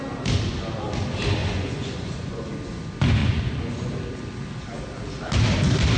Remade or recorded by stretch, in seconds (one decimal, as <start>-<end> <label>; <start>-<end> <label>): 0.0-1.4 recorded; 1.4-2.4 remade; 2.4-3.2 recorded; 3.2-3.9 remade; 3.9-6.0 recorded